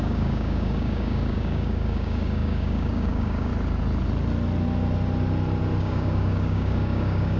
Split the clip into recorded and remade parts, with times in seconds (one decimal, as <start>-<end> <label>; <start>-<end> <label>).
0.0-3.5 remade; 3.5-5.8 recorded; 5.8-7.4 remade